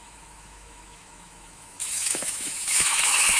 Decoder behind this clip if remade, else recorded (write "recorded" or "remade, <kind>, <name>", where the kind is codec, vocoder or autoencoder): remade, autoencoder, DAC-VAE